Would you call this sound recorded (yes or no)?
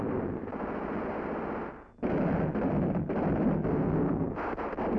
yes